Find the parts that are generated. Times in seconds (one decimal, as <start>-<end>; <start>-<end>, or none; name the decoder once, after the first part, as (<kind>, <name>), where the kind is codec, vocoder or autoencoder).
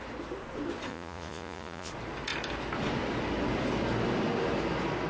0.9-1.9 (vocoder, Vocos)